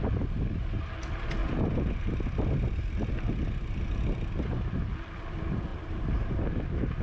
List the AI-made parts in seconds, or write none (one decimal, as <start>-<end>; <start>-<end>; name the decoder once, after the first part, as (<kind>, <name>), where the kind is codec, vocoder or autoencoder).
1.4-2.0 (vocoder, BigVGAN v2); 5.7-6.4